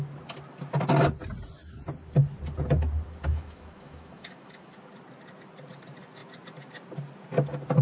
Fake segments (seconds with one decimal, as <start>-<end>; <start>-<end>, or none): 3.3-4.7

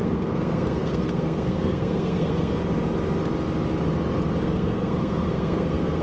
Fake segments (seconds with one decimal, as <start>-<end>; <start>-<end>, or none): 0.0-2.6; 4.4-6.0

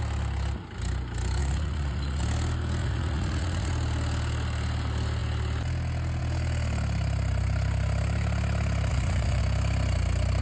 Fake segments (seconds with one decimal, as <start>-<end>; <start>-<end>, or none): 1.4-2.2; 2.8-3.7; 8.9-9.4

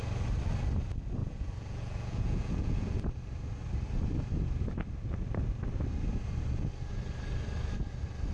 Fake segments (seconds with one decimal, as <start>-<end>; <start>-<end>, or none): 1.2-2.9